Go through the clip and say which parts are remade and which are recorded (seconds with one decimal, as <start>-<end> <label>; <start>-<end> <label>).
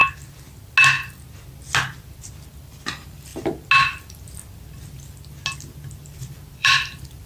0.0-2.9 recorded; 2.9-3.3 remade; 3.3-5.9 recorded; 5.9-7.3 remade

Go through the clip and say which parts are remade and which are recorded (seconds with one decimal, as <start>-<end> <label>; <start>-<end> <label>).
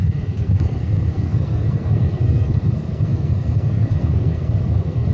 0.0-5.1 remade